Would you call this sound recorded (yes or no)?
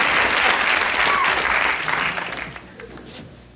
yes